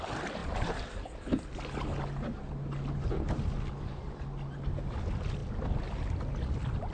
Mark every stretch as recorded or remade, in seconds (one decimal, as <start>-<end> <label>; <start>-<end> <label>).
0.0-6.9 recorded